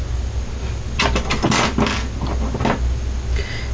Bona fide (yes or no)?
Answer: yes